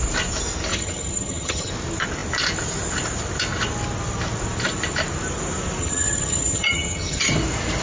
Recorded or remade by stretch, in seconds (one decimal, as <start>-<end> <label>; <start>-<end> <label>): 0.0-0.7 recorded; 0.7-1.7 remade; 1.7-5.8 recorded; 5.8-7.2 remade; 7.2-7.8 recorded